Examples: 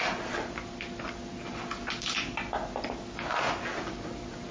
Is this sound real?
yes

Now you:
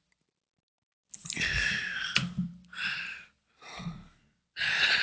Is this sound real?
yes